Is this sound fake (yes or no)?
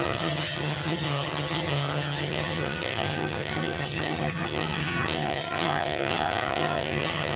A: yes